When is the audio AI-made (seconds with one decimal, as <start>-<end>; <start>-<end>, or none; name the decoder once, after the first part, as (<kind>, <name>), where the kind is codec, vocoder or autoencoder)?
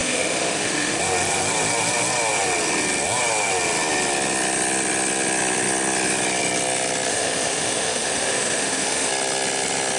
0.0-1.0 (autoencoder, DAC-VAE); 7.1-9.1